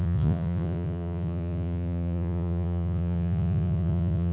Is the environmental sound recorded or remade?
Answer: remade